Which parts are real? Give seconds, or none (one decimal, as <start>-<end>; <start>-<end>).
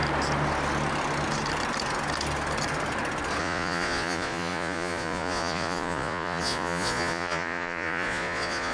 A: 0.0-3.4